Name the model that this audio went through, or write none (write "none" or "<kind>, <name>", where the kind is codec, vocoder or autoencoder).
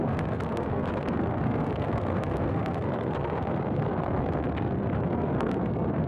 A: codec, SNAC